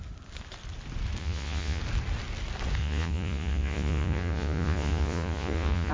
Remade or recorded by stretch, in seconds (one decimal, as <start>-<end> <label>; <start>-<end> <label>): 0.0-1.2 recorded; 1.2-1.8 remade; 1.8-2.8 recorded; 2.8-5.9 remade